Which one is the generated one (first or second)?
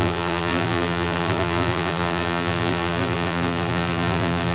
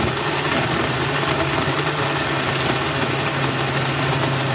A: first